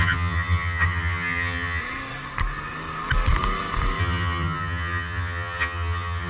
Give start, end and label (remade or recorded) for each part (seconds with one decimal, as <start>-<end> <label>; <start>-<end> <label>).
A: 0.0-1.8 remade; 1.8-4.0 recorded; 4.0-6.3 remade